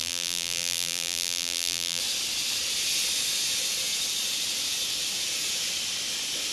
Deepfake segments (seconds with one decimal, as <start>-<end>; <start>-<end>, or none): 0.0-2.0

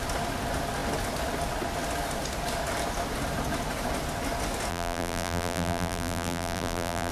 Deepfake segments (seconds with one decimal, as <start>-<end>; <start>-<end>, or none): 4.7-7.1

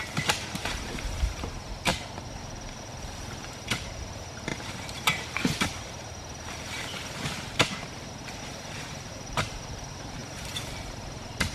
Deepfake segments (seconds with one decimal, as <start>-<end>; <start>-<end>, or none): 0.0-1.9; 4.0-10.2; 10.8-11.5

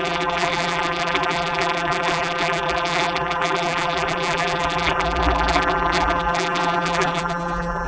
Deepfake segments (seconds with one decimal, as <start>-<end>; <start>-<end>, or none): 0.0-7.9